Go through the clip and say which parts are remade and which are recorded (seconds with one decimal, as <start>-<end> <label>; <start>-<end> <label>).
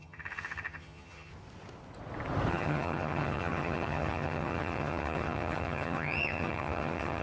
0.0-1.3 remade; 1.3-2.5 recorded; 2.5-7.2 remade